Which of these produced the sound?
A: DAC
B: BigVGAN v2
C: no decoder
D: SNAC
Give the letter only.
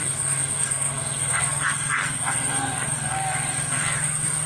D